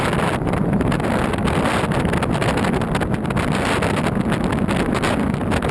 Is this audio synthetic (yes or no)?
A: no